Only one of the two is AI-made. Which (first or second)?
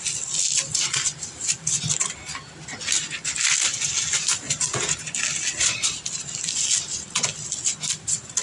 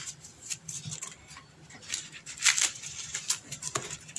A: second